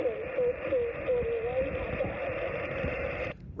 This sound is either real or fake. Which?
real